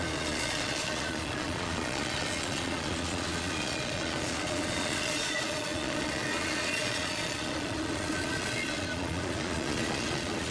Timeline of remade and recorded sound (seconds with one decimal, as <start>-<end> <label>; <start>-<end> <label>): 0.0-10.5 remade